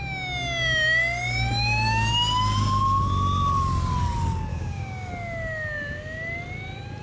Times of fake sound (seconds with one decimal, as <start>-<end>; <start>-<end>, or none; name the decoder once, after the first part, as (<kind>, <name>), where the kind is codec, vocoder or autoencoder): 4.5-5.1 (codec, DAC)